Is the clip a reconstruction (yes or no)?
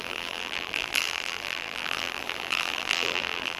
yes